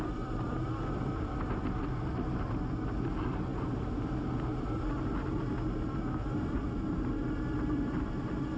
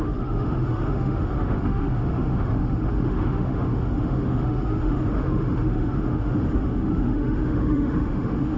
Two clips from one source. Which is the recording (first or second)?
first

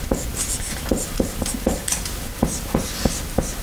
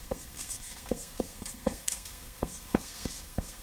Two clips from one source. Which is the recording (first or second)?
first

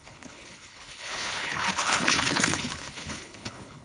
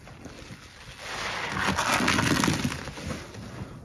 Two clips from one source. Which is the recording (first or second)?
second